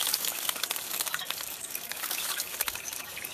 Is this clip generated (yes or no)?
yes